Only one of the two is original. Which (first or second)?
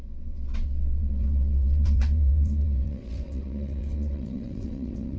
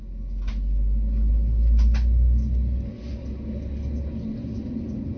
second